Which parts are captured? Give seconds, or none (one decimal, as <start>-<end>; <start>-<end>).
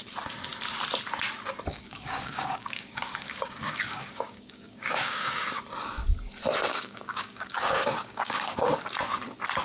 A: 0.0-1.7; 5.6-6.7; 8.8-9.6